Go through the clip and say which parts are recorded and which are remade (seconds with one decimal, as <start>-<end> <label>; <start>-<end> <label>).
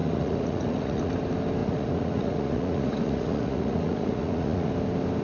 0.0-1.1 remade; 1.1-1.6 recorded; 1.6-4.7 remade; 4.7-5.2 recorded